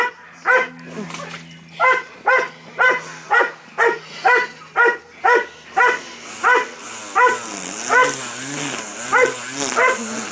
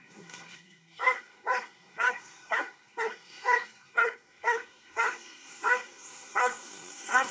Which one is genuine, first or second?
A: first